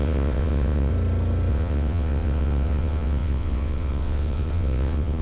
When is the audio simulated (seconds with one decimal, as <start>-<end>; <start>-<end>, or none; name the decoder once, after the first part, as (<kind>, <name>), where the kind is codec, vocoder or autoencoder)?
0.0-0.9 (vocoder, WaveNeXt); 1.5-5.2